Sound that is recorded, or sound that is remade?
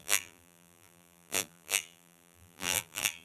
remade